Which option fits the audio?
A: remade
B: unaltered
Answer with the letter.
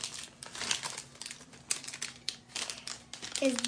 B